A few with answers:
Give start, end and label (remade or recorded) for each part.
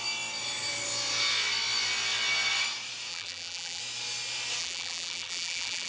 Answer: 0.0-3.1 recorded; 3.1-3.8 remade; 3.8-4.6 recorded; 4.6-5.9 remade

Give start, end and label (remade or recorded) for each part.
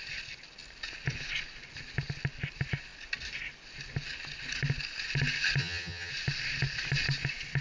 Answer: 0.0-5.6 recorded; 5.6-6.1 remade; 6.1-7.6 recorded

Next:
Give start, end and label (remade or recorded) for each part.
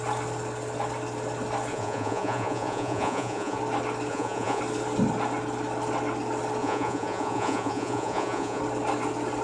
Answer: 0.0-1.7 recorded; 1.7-3.6 remade; 3.6-4.1 recorded; 4.1-4.6 remade; 4.6-6.6 recorded; 6.6-8.6 remade; 8.6-9.4 recorded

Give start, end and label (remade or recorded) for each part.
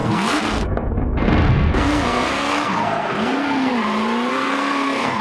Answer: 0.0-3.7 remade; 3.7-4.3 recorded; 4.3-5.2 remade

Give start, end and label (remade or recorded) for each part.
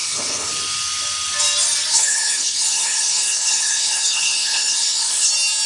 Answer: 0.0-0.5 remade; 0.5-1.9 recorded; 1.9-5.3 remade; 5.3-5.7 recorded